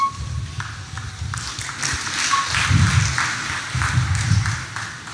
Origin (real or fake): real